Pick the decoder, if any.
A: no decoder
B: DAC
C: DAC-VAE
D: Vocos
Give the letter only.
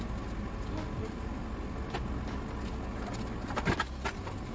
A